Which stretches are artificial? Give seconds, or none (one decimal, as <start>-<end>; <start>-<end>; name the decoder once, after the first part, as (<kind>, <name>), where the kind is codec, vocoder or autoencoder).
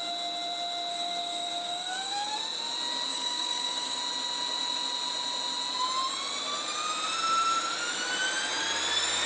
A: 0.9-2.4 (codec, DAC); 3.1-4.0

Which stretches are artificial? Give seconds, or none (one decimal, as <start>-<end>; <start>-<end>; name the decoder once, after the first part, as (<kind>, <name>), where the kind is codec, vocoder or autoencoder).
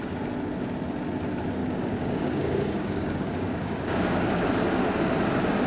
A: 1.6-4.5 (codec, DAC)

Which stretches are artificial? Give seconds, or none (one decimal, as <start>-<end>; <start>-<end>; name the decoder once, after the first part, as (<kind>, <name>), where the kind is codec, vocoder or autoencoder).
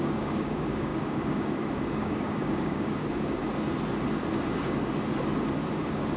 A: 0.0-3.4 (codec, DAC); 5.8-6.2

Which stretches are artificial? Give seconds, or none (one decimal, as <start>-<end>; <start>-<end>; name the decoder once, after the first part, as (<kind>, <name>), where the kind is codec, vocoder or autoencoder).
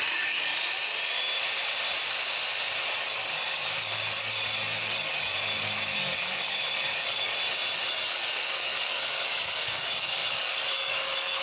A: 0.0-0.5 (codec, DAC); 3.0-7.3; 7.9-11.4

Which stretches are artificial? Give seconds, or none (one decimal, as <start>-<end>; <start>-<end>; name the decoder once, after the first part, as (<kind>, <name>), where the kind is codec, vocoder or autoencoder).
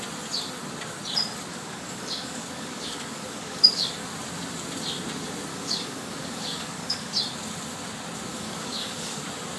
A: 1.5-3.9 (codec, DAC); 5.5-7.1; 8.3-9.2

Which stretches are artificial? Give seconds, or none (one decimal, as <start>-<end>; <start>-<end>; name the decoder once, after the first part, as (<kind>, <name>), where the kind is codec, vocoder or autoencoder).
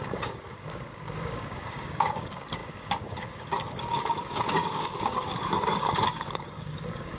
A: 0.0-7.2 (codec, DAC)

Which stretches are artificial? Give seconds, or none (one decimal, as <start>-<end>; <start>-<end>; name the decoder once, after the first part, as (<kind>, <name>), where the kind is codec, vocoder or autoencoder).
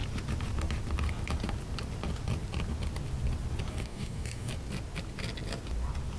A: 3.7-4.5 (codec, DAC)